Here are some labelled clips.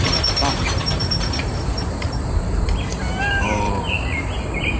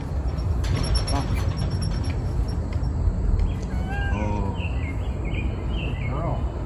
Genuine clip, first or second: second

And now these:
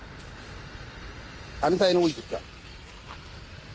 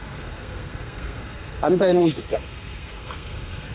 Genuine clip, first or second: first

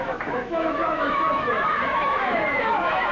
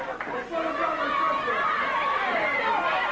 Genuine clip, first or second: second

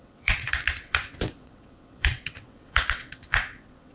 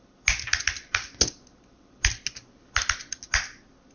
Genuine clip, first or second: second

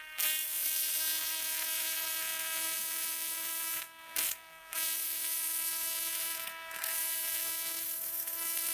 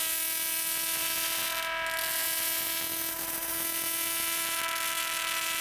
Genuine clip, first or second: second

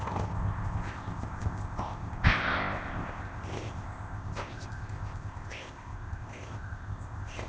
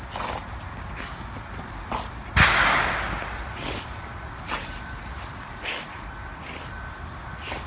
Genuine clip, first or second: second